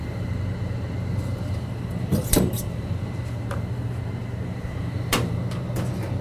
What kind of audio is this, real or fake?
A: fake